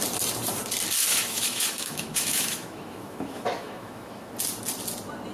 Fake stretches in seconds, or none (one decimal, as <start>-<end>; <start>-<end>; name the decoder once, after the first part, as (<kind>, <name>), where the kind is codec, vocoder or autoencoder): 1.1-4.3 (autoencoder, DAC-VAE)